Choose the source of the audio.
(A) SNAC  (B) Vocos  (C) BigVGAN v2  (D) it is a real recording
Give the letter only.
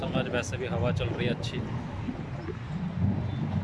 D